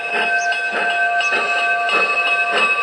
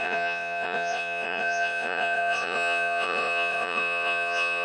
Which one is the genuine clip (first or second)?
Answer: first